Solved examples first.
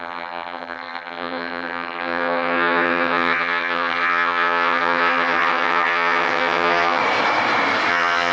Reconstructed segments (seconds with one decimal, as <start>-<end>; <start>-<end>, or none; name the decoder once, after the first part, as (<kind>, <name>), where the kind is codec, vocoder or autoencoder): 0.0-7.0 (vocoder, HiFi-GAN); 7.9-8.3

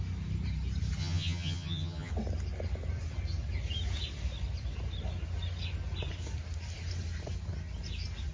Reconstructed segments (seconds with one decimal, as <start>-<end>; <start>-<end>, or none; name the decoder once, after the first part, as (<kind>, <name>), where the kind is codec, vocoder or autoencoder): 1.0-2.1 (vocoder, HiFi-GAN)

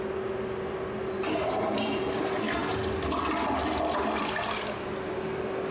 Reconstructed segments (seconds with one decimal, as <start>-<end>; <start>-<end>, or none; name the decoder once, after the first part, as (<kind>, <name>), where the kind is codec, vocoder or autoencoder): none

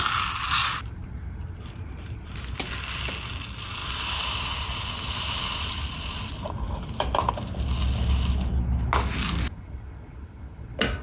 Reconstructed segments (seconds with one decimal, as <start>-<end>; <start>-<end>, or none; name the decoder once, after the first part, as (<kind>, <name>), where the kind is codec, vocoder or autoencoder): none

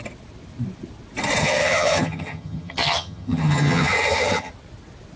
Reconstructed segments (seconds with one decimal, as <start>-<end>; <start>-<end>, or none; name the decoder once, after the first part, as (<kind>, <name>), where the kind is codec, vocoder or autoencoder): 1.4-4.5 (vocoder, HiFi-GAN)

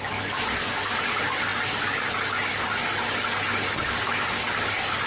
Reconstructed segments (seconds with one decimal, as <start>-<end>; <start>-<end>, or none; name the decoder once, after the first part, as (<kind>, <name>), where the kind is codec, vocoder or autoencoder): none

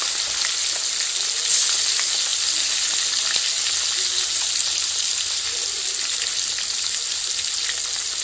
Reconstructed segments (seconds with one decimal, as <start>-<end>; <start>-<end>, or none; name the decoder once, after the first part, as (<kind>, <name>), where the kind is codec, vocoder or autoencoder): none